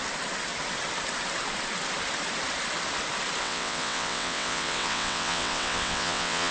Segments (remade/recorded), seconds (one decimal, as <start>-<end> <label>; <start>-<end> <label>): 0.0-3.4 recorded; 3.4-6.5 remade